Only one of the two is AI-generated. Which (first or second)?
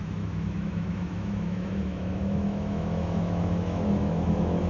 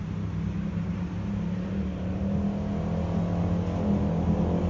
first